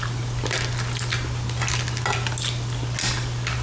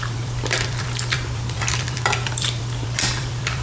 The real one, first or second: first